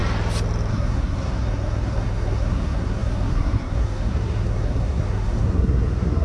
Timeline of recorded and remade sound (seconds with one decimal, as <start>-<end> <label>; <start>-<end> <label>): 0.0-0.7 recorded; 0.7-6.2 remade